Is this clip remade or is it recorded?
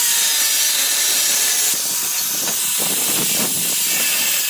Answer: recorded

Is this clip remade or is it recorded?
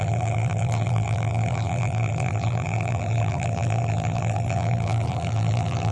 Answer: remade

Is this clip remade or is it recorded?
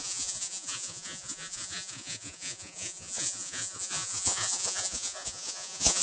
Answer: remade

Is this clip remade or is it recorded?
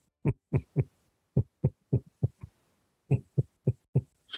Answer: recorded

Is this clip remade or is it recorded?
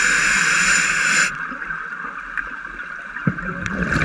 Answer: recorded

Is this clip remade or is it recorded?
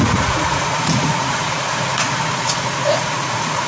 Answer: remade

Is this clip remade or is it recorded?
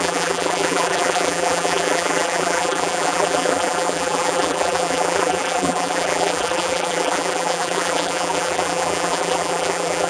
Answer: remade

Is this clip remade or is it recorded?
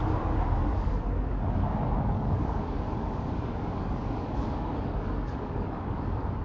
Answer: remade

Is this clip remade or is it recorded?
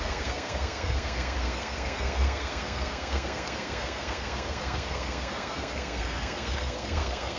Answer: remade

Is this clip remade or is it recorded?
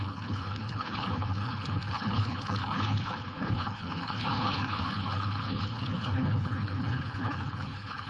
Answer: remade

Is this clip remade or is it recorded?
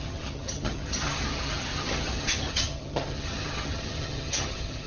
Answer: remade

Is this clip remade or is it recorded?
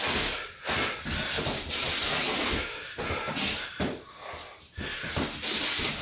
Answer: recorded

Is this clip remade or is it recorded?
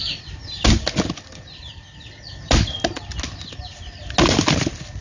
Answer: recorded